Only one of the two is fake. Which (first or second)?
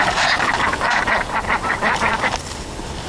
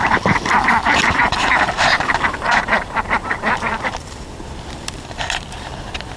second